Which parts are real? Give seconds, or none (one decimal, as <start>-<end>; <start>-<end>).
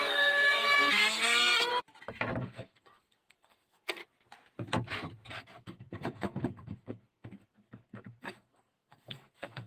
1.7-2.4; 4.0-5.3